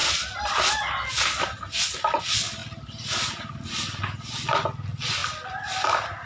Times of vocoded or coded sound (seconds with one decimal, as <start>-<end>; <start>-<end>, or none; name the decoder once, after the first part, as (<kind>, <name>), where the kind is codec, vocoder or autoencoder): none